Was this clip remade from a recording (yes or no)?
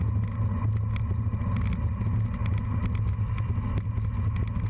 no